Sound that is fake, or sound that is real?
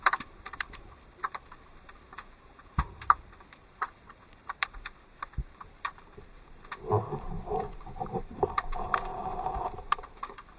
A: fake